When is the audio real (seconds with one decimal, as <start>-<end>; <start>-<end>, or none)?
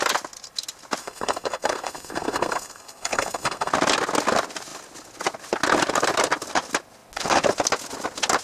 0.0-1.0; 3.7-8.4